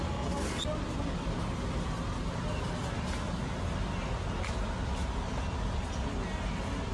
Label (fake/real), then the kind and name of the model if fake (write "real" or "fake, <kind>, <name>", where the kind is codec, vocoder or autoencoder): real